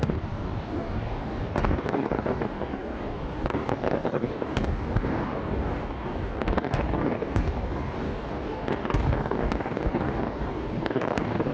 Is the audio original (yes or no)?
no